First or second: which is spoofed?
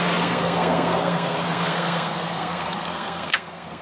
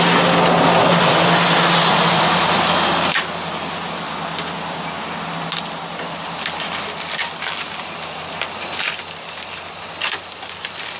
first